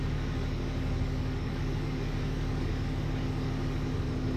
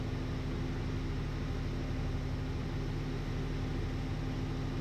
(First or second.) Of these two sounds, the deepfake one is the first